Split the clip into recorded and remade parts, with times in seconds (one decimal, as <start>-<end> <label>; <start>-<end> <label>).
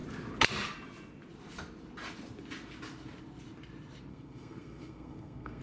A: 0.0-4.1 recorded; 4.1-5.6 remade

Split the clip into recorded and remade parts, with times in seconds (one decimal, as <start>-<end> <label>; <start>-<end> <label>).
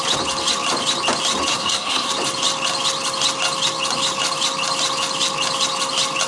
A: 0.0-1.5 recorded; 1.5-2.1 remade; 2.1-6.3 recorded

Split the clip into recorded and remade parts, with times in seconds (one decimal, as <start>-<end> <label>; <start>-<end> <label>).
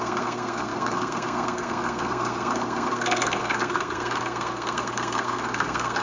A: 0.0-6.0 remade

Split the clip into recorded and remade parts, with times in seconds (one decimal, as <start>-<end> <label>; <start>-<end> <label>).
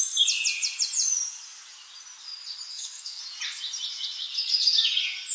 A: 0.0-2.7 recorded; 2.7-3.2 remade; 3.2-5.3 recorded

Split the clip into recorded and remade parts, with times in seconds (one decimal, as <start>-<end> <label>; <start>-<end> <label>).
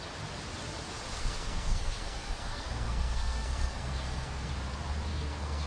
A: 0.0-1.1 recorded; 1.1-4.5 remade; 4.5-5.1 recorded; 5.1-5.7 remade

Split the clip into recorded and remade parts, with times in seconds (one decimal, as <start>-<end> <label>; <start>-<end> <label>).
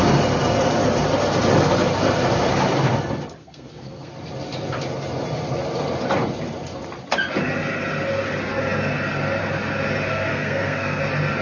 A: 0.0-3.4 recorded; 3.4-4.1 remade; 4.1-10.1 recorded; 10.1-11.0 remade; 11.0-11.4 recorded